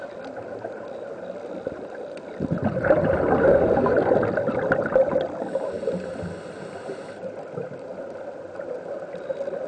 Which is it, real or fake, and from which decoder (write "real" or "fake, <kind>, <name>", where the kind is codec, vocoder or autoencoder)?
real